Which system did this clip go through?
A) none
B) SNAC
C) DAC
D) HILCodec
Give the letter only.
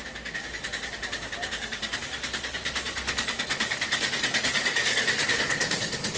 C